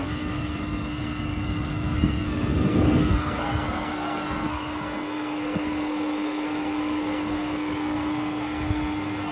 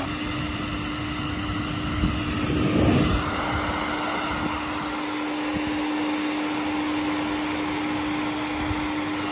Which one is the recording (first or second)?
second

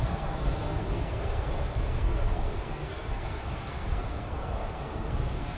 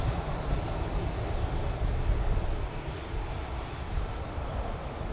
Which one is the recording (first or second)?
second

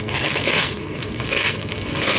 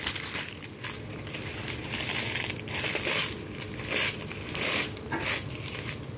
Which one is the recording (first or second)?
second